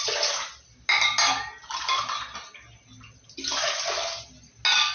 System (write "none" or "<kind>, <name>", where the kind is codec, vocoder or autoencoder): none